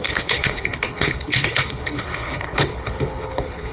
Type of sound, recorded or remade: remade